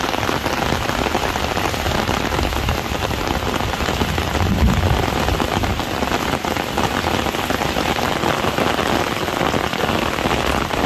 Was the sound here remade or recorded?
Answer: recorded